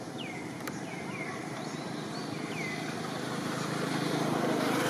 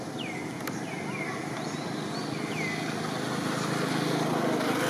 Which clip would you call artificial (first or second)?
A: first